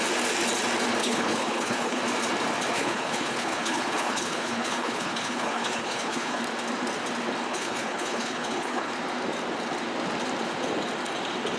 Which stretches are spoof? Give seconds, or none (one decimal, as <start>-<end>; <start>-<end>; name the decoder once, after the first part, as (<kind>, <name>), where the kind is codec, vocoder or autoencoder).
1.0-2.0 (codec, HILCodec); 2.7-6.4; 7.5-8.9